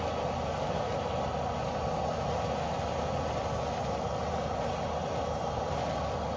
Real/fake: real